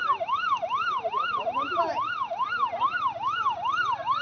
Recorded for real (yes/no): yes